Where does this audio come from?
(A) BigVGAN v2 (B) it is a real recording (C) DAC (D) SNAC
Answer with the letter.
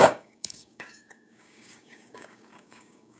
C